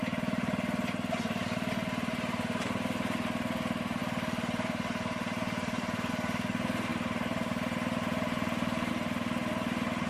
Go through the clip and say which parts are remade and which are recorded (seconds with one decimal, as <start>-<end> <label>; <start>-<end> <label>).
0.0-4.0 recorded; 4.0-6.1 remade; 6.1-6.9 recorded; 6.9-8.9 remade; 8.9-10.1 recorded